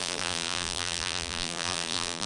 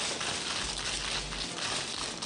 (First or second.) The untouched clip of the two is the second